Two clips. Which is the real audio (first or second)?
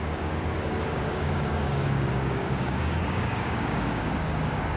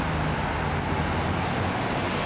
second